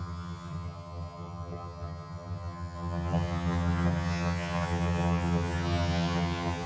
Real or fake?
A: fake